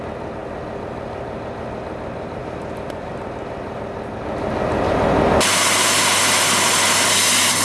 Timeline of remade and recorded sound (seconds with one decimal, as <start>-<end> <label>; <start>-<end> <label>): 0.0-2.4 recorded; 2.4-3.1 remade; 3.1-7.6 recorded